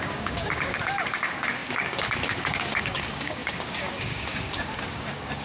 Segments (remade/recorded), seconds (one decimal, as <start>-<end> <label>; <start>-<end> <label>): 0.0-5.4 remade